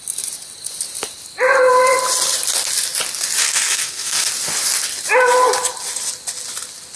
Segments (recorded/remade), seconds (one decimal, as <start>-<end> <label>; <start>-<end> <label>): 0.0-3.4 recorded; 3.4-4.3 remade; 4.3-7.0 recorded

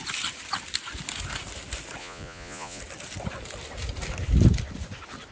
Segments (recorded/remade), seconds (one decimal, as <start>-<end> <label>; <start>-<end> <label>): 0.0-2.0 recorded; 2.0-2.8 remade; 2.8-5.3 recorded

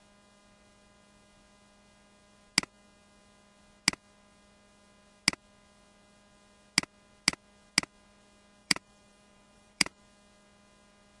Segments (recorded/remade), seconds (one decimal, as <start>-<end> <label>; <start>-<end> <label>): 0.0-8.6 recorded; 8.6-10.0 remade; 10.0-11.2 recorded